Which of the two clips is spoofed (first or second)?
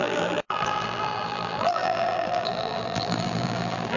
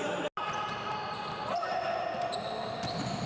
first